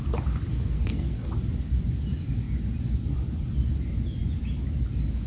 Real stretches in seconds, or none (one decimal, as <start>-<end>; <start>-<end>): 0.0-0.5; 1.3-5.3